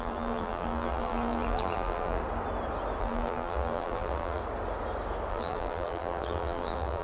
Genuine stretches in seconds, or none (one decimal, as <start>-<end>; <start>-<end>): 2.2-3.0; 4.4-5.3